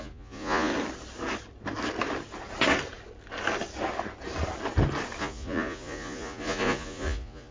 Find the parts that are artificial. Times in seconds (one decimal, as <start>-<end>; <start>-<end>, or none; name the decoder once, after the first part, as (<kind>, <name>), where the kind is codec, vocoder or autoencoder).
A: 0.0-0.7 (vocoder, Vocos); 5.2-7.5